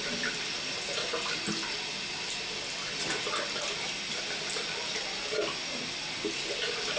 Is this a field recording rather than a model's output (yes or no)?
yes